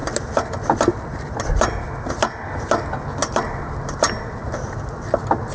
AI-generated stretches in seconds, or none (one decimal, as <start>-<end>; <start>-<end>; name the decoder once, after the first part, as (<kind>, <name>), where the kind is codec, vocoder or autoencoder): none